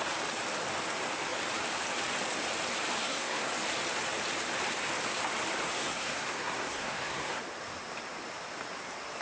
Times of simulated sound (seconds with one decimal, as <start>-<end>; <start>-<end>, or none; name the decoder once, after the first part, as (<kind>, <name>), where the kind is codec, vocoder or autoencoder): 3.0-3.5 (codec, SNAC); 5.8-7.4